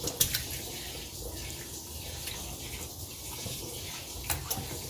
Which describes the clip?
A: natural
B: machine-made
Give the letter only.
A